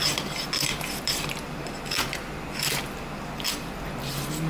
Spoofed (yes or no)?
no